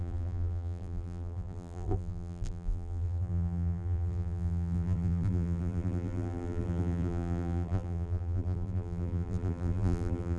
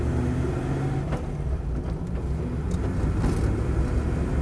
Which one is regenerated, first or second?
first